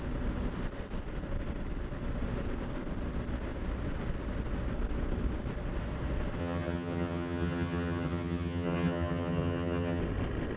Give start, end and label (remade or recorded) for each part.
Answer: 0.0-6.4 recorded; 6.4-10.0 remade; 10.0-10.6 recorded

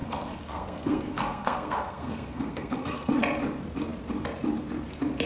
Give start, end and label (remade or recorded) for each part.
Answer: 0.0-3.2 remade; 3.2-5.3 recorded

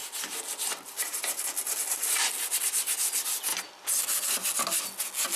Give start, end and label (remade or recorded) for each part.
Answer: 0.0-5.4 recorded